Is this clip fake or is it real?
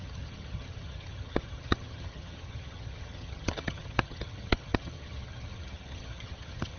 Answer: fake